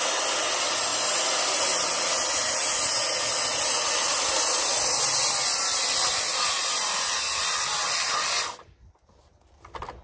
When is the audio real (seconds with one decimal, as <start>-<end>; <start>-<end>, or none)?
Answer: 0.0-10.0